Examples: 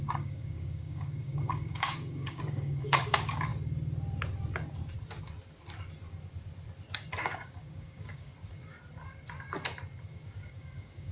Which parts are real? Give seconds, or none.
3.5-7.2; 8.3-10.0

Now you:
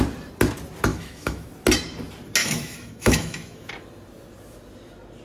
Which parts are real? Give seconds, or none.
0.0-0.9; 1.5-2.4; 3.7-5.2

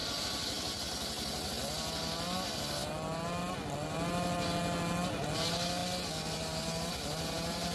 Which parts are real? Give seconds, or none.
0.0-7.7

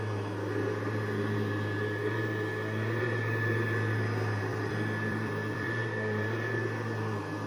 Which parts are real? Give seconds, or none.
0.0-4.5; 5.7-7.5

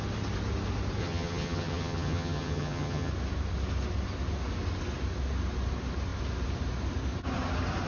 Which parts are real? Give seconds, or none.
0.0-1.0; 3.1-7.9

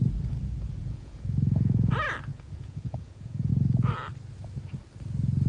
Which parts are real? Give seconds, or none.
0.0-0.8; 1.9-2.3; 3.5-5.5

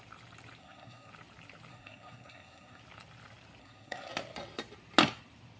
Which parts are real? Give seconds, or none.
0.0-0.6; 1.1-1.7; 2.8-3.6; 4.1-5.6